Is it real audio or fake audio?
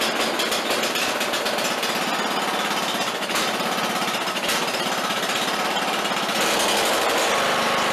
real